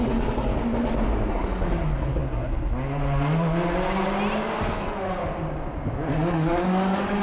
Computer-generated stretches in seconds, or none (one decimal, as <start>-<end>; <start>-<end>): 0.0-0.5; 1.3-2.2; 4.7-5.2; 6.1-7.2